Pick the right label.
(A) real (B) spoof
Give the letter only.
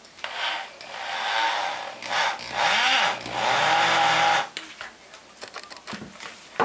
A